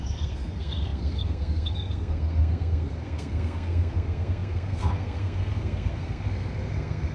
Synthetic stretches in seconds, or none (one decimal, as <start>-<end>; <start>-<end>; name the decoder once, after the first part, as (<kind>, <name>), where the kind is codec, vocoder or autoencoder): 0.0-7.1 (codec, SNAC)